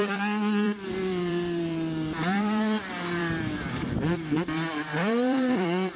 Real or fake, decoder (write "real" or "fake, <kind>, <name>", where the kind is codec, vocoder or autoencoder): fake, vocoder, BigVGAN v2